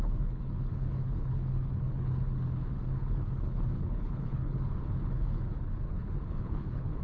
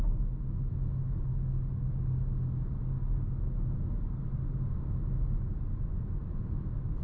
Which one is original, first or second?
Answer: second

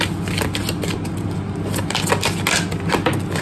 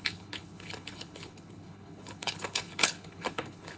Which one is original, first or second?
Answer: first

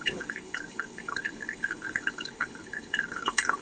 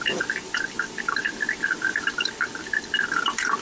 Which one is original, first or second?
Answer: second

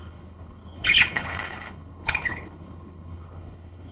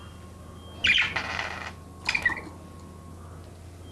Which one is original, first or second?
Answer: second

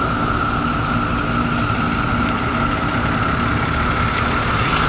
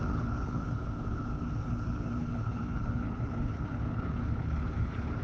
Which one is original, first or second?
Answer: first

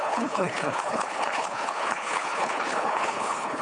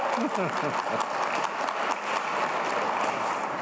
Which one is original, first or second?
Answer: second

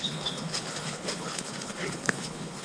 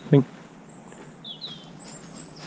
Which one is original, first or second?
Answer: second